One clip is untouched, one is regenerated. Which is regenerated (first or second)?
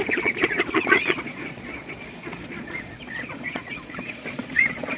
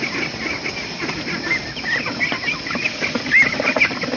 first